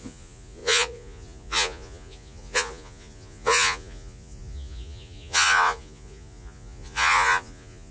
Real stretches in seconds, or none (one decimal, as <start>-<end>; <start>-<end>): none